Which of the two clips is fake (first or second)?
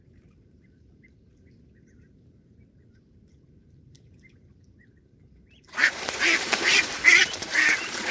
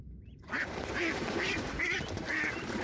first